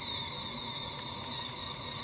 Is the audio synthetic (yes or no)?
no